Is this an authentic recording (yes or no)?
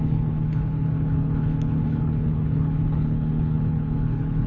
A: no